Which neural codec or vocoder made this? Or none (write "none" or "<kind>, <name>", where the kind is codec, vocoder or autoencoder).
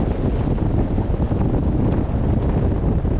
none